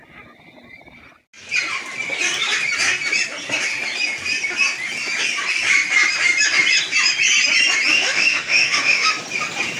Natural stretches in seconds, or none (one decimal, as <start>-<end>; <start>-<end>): 0.0-7.9; 9.1-9.8